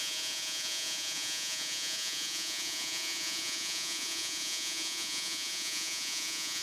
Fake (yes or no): yes